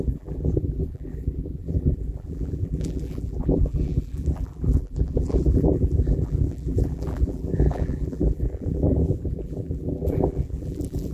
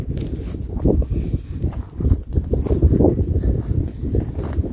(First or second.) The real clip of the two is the second